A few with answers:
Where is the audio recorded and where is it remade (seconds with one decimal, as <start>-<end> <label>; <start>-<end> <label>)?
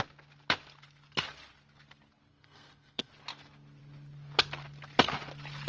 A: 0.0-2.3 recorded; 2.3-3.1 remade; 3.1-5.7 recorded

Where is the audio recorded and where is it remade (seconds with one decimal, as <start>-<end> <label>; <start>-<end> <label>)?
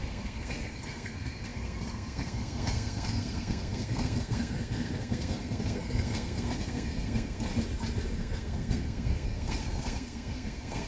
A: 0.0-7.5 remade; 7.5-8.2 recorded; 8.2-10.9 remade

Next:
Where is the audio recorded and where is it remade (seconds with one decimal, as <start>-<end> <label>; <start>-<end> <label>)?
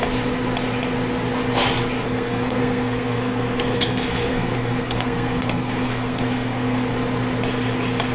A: 0.0-2.0 recorded; 2.0-6.9 remade; 6.9-8.1 recorded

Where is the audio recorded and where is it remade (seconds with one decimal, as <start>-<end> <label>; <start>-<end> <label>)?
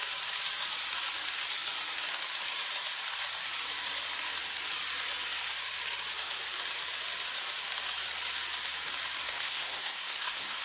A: 0.0-9.2 recorded; 9.2-10.6 remade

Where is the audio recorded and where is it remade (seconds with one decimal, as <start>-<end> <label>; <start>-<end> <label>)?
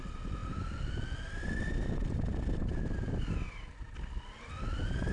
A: 0.0-5.1 recorded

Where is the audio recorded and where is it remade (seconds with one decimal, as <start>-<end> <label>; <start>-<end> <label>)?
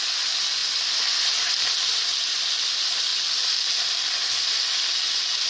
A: 0.0-5.5 recorded